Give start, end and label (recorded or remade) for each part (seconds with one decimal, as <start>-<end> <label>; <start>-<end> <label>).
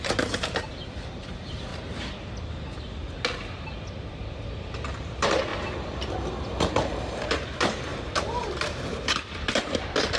0.0-1.7 remade; 1.7-3.9 recorded; 3.9-5.5 remade; 5.5-6.6 recorded; 6.6-10.2 remade